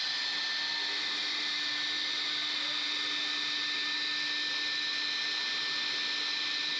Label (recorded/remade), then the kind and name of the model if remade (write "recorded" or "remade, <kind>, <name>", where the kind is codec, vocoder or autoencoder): recorded